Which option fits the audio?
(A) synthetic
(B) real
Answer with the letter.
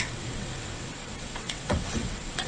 A